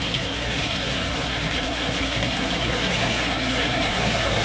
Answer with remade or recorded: remade